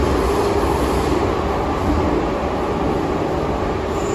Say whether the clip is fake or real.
real